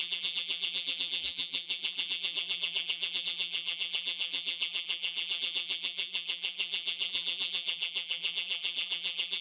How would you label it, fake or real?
fake